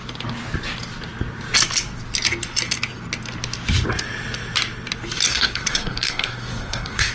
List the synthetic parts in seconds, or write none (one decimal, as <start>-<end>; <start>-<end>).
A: 5.3-7.1